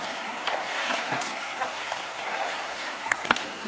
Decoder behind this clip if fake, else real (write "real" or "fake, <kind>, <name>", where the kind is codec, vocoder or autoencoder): fake, codec, SNAC